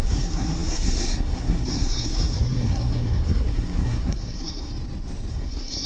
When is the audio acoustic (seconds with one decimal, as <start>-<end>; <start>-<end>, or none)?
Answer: 4.7-5.3